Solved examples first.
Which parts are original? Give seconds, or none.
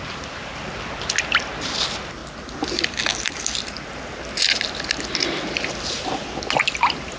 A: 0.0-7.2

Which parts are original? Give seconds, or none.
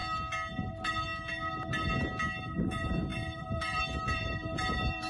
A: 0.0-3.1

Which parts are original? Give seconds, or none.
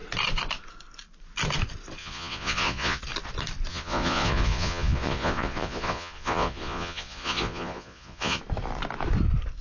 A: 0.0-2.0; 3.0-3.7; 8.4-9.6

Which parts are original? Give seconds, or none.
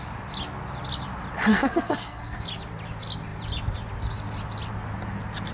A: 0.0-1.5; 2.4-5.5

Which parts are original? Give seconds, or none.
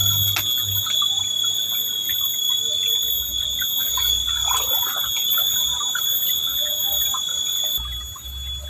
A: 0.0-8.7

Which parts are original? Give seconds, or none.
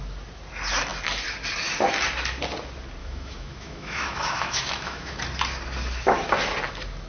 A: 0.0-3.0; 5.2-7.1